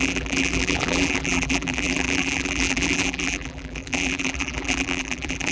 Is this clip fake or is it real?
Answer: fake